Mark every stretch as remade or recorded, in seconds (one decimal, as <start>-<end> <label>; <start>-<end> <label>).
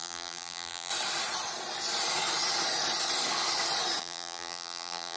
0.0-0.9 remade; 0.9-4.0 recorded; 4.0-5.2 remade